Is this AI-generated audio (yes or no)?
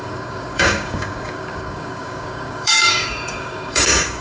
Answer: yes